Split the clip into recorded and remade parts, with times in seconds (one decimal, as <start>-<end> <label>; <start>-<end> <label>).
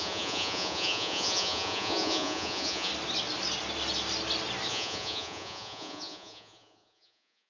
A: 0.0-2.9 remade; 2.9-4.7 recorded; 4.7-7.5 remade